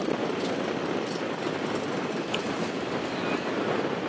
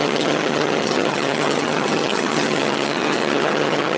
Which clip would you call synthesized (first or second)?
second